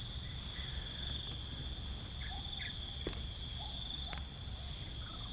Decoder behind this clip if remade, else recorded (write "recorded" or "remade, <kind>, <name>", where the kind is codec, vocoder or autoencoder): recorded